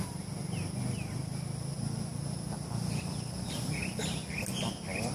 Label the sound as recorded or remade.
recorded